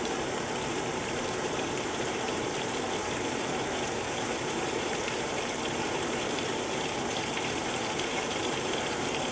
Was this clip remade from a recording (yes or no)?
yes